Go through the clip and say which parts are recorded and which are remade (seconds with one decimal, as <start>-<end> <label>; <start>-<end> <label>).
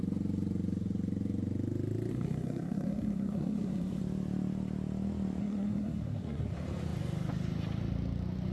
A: 0.0-2.1 recorded; 2.1-4.0 remade; 4.0-5.4 recorded; 5.4-6.5 remade; 6.5-8.5 recorded